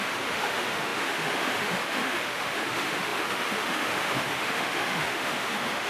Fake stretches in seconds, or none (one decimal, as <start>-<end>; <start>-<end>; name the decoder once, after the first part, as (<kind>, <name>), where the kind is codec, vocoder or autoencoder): 0.0-5.9 (autoencoder, DAC-VAE)